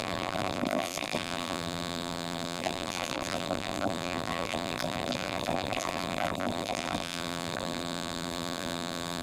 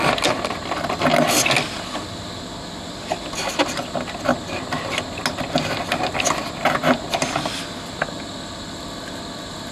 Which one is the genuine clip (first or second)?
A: second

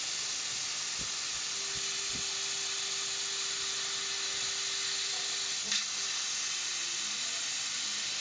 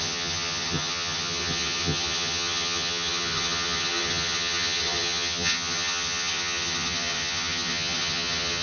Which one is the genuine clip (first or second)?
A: first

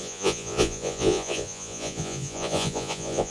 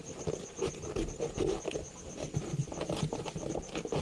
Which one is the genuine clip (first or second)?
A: second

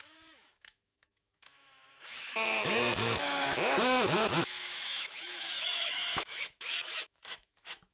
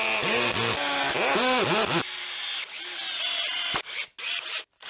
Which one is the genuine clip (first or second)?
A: second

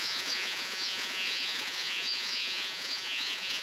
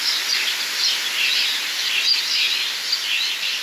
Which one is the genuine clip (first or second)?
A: second